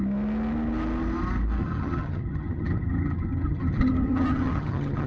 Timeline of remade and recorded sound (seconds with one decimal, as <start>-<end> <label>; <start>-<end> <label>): 0.0-1.6 recorded; 1.6-5.1 remade